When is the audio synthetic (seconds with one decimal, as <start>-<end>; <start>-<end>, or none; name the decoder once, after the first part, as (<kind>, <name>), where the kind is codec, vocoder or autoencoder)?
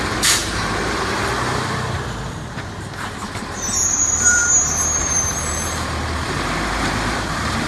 0.0-4.4 (vocoder, BigVGAN v2); 5.0-7.7